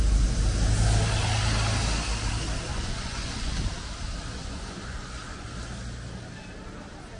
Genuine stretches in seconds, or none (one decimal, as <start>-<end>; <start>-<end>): 0.0-2.7; 3.5-4.4; 5.5-7.2